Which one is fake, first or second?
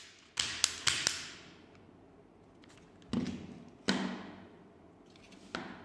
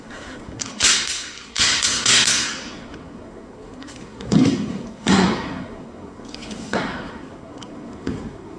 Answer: second